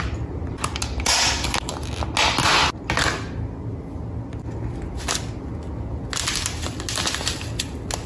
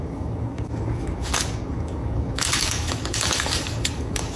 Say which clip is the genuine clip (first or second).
first